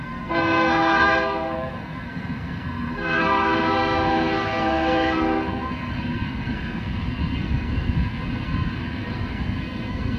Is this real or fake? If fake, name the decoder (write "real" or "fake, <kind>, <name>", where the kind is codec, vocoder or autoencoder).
fake, codec, SNAC